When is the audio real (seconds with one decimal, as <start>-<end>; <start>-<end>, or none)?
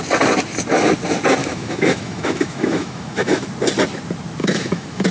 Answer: 0.0-1.4; 3.4-4.4